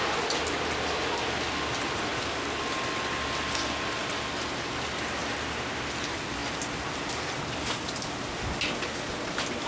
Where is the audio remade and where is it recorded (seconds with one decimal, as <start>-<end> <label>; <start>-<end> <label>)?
0.0-5.2 recorded; 5.2-5.9 remade; 5.9-9.7 recorded